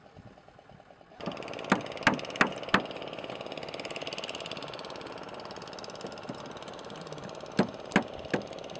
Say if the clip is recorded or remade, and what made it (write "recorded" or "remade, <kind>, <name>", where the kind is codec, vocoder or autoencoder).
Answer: recorded